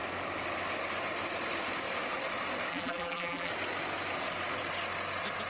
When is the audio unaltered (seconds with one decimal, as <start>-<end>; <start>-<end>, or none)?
0.0-2.7; 3.5-5.5